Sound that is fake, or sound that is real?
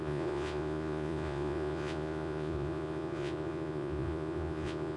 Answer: fake